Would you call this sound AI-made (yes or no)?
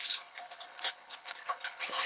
yes